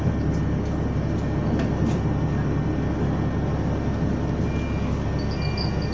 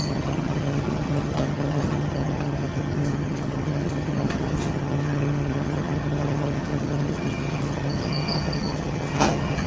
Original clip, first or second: first